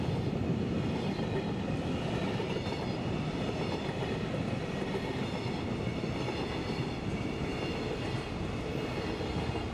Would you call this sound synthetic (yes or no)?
no